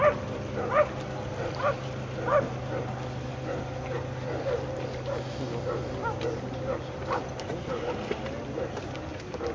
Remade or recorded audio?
recorded